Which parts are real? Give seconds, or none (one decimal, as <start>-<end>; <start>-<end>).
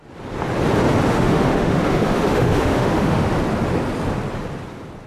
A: 0.0-1.1; 3.3-5.1